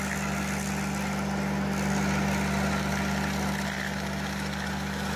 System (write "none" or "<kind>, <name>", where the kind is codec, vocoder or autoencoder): none